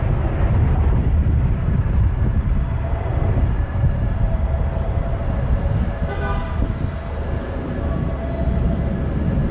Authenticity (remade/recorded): recorded